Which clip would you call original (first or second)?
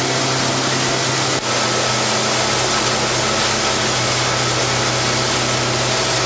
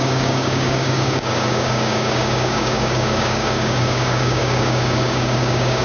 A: first